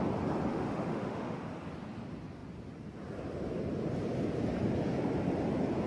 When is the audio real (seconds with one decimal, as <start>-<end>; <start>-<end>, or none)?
0.0-0.5; 1.4-5.9